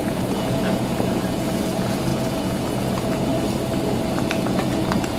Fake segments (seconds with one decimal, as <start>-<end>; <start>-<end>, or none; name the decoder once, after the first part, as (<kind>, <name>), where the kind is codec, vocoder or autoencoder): 0.0-3.3 (vocoder, Vocos); 4.2-5.2